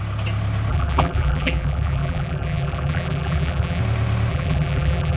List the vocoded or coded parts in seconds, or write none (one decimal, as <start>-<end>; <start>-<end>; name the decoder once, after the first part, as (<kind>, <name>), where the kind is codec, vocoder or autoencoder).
0.7-3.8 (vocoder, BigVGAN v2); 4.3-5.2